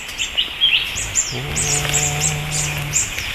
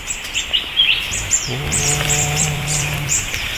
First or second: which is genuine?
first